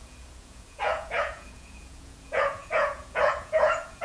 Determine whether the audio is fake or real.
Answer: fake